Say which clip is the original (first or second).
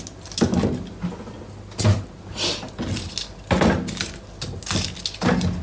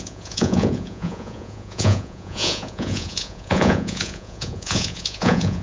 first